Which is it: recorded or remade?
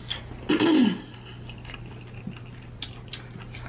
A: recorded